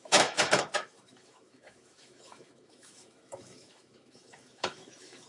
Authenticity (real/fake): fake